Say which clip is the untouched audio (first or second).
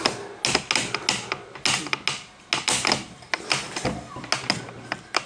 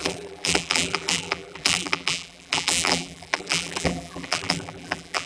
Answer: first